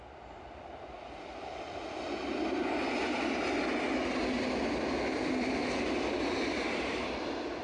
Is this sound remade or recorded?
recorded